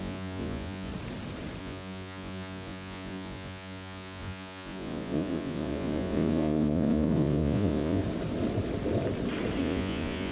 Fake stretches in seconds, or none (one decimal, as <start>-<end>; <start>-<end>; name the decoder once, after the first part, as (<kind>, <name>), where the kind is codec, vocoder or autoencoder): 0.0-0.9 (vocoder, Vocos); 1.6-8.0; 9.6-10.3